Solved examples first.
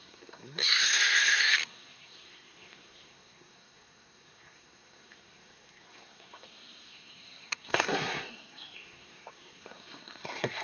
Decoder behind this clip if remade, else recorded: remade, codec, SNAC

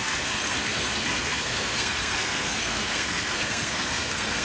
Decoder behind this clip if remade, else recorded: remade, codec, SNAC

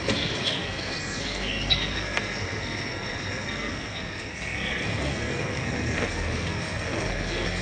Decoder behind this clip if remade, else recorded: remade, codec, SNAC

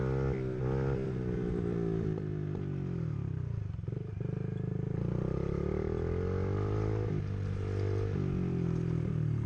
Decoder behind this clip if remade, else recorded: recorded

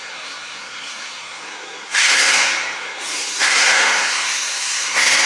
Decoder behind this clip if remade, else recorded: remade, codec, SNAC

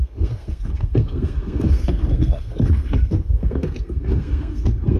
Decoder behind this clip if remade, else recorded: remade, codec, SNAC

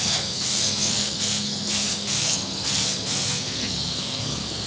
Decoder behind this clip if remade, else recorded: remade, codec, SNAC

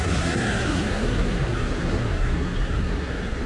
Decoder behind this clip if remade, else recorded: remade, codec, SNAC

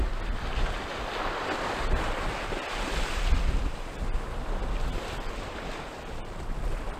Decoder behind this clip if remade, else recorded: recorded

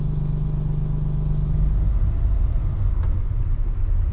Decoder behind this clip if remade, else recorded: recorded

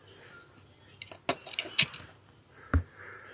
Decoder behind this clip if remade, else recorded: recorded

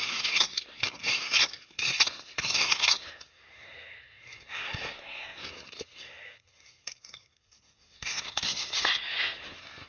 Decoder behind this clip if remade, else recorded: remade, codec, SNAC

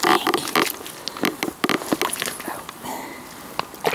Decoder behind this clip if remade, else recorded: recorded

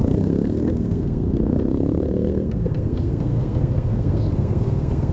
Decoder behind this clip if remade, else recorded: remade, codec, SNAC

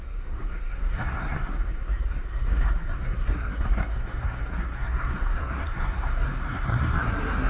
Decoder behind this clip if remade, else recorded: remade, codec, SNAC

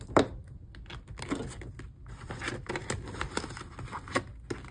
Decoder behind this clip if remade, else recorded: recorded